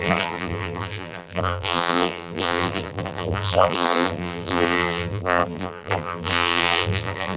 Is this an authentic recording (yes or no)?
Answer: no